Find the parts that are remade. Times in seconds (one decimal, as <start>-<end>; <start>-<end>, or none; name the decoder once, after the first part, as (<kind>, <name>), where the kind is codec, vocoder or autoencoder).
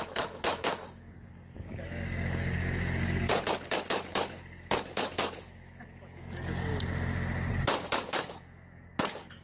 0.0-6.7 (codec, DAC); 7.5-9.4